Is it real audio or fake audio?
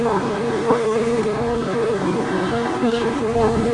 fake